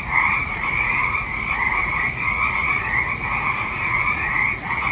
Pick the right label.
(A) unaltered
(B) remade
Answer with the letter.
B